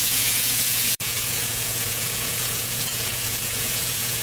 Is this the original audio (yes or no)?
no